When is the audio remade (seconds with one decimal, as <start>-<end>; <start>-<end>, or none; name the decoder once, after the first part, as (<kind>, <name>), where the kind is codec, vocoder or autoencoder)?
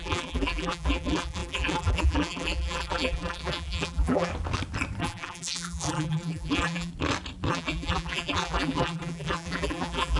0.0-4.3 (vocoder, BigVGAN v2); 5.0-6.9; 7.5-10.2